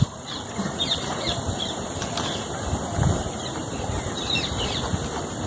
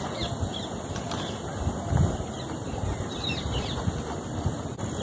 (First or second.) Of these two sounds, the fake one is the first